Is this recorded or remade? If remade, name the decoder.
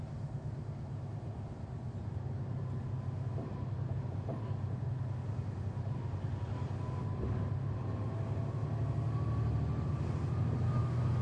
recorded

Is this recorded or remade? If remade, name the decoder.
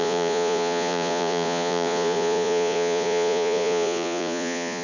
remade, vocoder, Vocos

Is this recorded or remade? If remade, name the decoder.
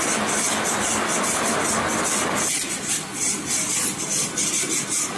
recorded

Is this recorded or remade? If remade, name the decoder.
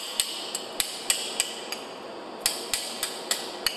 recorded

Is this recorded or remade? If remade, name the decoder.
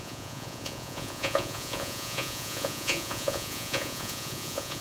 remade, vocoder, Vocos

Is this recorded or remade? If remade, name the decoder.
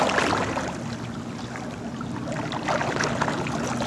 recorded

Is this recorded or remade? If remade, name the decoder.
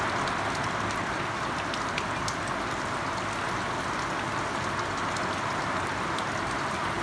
recorded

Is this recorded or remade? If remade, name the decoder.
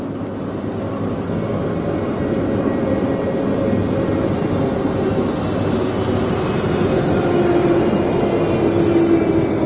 recorded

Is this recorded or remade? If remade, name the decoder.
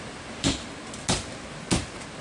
recorded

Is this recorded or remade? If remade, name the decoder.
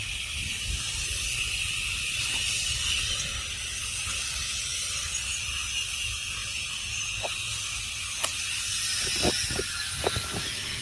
recorded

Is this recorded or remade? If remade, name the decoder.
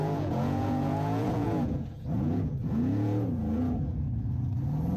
remade, vocoder, Vocos